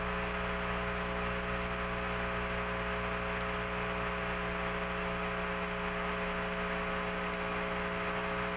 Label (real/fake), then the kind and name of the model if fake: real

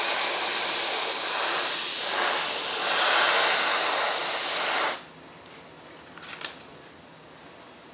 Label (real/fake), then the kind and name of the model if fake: real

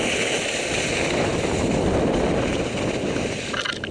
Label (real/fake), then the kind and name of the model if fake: real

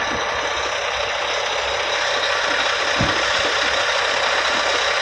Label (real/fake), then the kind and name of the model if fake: real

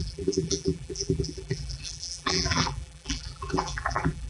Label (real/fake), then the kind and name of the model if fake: fake, vocoder, BigVGAN v2